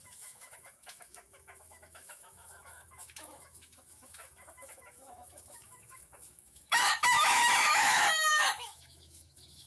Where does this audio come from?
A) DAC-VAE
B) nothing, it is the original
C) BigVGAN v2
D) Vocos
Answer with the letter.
A